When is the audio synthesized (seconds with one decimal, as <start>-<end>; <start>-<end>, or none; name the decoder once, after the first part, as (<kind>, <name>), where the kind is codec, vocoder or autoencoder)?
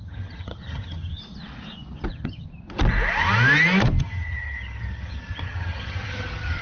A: 0.0-1.2 (vocoder, HiFi-GAN); 2.1-2.5; 4.0-6.6